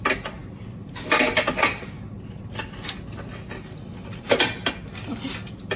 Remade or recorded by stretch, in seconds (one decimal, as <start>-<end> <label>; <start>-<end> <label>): 0.0-5.8 recorded

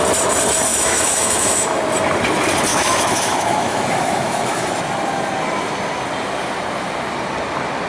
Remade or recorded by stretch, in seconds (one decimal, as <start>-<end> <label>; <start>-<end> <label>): 0.0-0.7 recorded; 0.7-1.8 remade; 1.8-2.7 recorded; 2.7-4.7 remade; 4.7-7.9 recorded

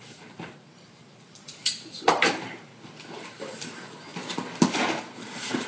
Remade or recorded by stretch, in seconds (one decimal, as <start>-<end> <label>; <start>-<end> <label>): 0.0-2.7 remade; 2.7-3.4 recorded; 3.4-4.1 remade; 4.1-5.0 recorded; 5.0-5.7 remade

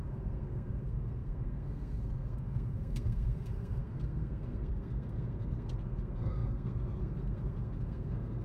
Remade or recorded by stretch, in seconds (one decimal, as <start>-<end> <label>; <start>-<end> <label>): 0.0-8.4 remade

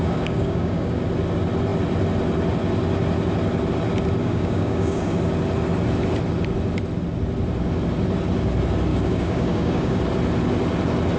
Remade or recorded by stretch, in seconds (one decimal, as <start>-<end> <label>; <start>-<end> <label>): 0.0-1.0 remade; 1.0-4.2 recorded; 4.2-5.2 remade; 5.2-8.9 recorded; 8.9-10.0 remade; 10.0-11.2 recorded

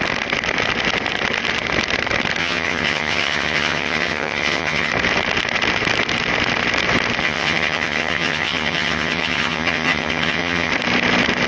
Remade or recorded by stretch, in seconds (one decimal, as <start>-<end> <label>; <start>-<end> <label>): 0.0-2.4 recorded; 2.4-4.9 remade; 4.9-7.2 recorded; 7.2-10.7 remade; 10.7-11.5 recorded

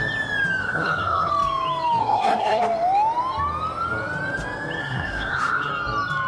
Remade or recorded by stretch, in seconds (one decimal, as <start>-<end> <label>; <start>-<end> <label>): 0.0-0.6 recorded; 0.6-1.3 remade; 1.3-2.0 recorded; 2.0-2.6 remade; 2.6-4.8 recorded; 4.8-5.7 remade; 5.7-6.3 recorded

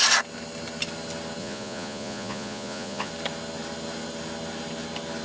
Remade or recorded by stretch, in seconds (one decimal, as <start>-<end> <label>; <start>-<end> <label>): 0.0-1.4 recorded; 1.4-3.1 remade; 3.1-5.2 recorded